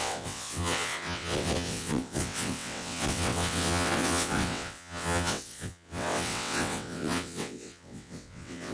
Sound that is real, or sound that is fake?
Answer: fake